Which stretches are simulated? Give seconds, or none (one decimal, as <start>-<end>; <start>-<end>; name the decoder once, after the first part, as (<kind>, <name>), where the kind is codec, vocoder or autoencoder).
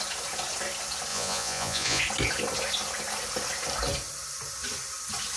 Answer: 1.1-2.0 (vocoder, Vocos)